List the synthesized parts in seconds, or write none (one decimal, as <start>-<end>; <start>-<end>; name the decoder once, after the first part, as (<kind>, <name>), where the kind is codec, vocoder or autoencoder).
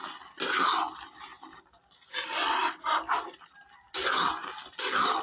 1.3-3.9 (vocoder, BigVGAN v2)